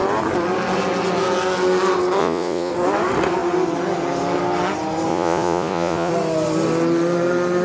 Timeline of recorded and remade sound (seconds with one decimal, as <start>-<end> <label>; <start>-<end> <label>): 0.0-2.2 recorded; 2.2-2.7 remade; 2.7-5.1 recorded; 5.1-6.1 remade; 6.1-7.6 recorded